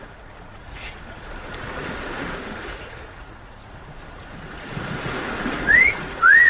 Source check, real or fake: fake